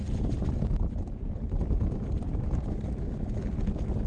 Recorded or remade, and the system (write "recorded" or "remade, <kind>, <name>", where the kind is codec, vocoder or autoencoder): recorded